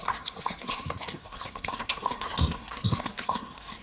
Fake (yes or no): yes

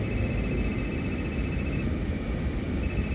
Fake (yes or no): no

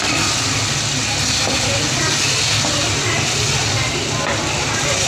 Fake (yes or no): no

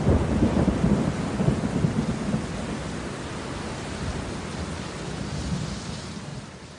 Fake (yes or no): no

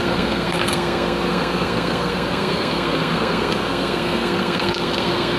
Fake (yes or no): yes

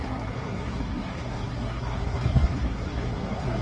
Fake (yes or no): yes